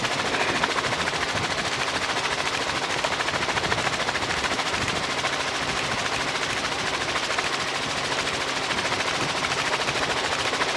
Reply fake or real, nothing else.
real